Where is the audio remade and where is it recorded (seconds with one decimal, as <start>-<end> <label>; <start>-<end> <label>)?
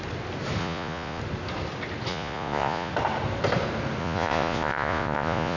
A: 0.0-0.6 recorded; 0.6-1.2 remade; 1.2-2.1 recorded; 2.1-2.9 remade; 2.9-4.0 recorded; 4.0-5.6 remade